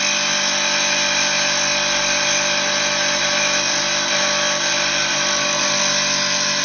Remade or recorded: recorded